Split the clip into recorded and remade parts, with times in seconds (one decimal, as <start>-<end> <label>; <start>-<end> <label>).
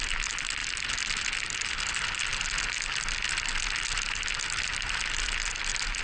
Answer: 0.0-6.0 recorded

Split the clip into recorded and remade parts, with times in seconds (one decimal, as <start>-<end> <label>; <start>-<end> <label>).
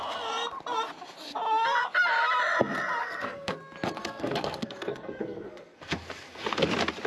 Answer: 0.0-3.0 recorded; 3.0-3.6 remade; 3.6-4.0 recorded; 4.0-6.6 remade; 6.6-7.1 recorded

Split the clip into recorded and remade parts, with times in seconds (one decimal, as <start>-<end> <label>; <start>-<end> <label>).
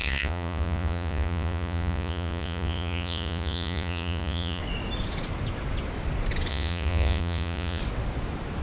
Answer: 0.0-4.6 remade; 4.6-6.5 recorded; 6.5-7.8 remade; 7.8-8.6 recorded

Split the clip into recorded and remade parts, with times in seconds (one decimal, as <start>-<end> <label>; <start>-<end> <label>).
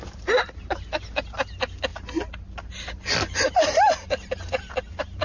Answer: 0.0-5.2 recorded